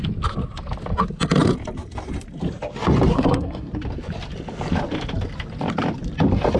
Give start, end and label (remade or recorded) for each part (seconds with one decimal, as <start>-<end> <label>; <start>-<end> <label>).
0.0-3.1 recorded; 3.1-3.7 remade; 3.7-6.6 recorded